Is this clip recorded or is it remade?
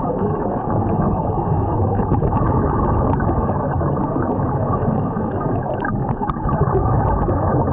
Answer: remade